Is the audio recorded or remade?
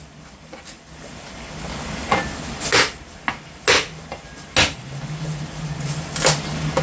recorded